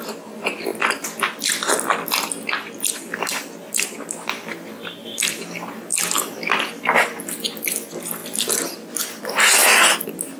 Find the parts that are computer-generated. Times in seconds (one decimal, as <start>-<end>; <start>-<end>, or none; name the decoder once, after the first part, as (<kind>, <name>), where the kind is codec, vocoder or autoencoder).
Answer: none